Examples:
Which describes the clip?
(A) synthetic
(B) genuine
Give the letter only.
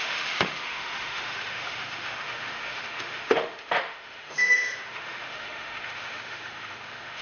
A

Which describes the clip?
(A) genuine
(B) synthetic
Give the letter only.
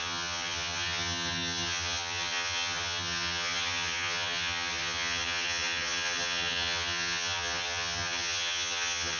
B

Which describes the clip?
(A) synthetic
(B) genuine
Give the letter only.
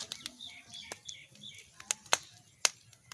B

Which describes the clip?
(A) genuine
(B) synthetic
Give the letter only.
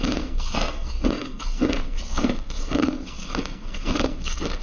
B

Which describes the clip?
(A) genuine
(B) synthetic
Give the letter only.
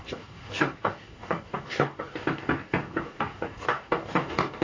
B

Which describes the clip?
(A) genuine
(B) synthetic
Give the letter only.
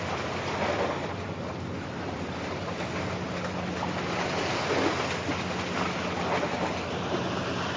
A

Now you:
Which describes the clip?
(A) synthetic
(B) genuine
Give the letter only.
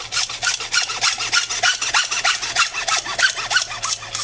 B